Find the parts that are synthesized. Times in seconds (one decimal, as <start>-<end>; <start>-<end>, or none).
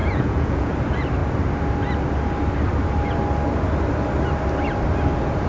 0.0-0.7